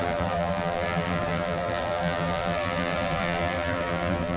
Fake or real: fake